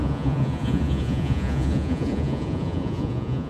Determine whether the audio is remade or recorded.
remade